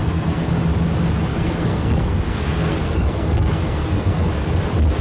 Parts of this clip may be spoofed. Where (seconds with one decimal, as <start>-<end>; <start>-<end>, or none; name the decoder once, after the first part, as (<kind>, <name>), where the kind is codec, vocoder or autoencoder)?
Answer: 0.0-0.5 (codec, SNAC); 1.3-4.3